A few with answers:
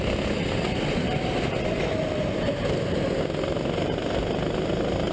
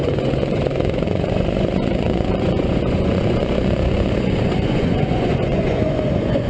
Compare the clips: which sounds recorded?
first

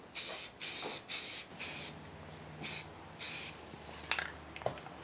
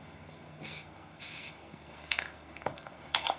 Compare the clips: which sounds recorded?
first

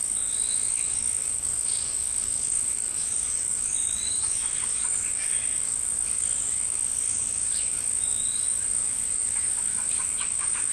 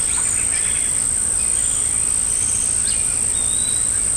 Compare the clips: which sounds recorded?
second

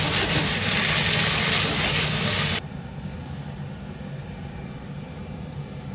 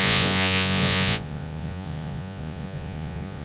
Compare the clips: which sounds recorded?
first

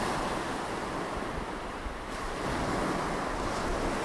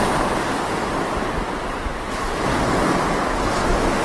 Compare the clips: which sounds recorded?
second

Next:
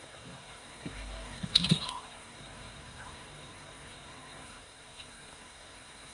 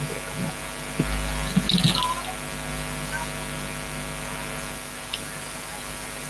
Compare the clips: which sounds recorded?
second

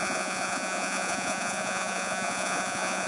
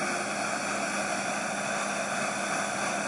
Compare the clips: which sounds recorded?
second